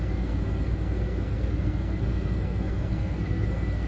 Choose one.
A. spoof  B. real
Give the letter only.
A